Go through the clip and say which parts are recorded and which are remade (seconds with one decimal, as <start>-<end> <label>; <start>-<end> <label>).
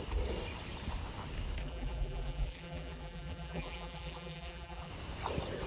0.0-1.6 recorded; 1.6-4.9 remade; 4.9-5.7 recorded